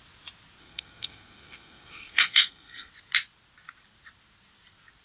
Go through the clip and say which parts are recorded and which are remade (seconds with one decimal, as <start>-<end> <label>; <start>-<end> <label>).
0.0-0.6 recorded; 0.6-2.9 remade; 2.9-5.0 recorded